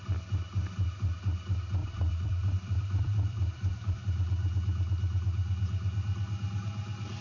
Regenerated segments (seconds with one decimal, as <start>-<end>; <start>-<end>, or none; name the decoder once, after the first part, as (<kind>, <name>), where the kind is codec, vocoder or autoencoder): 1.8-4.0 (vocoder, BigVGAN v2)